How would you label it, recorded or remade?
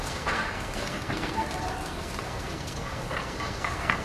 remade